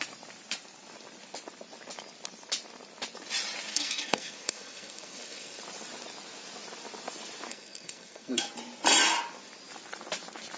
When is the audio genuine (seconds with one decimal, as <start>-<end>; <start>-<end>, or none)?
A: 0.0-3.7; 5.6-7.5; 8.5-10.6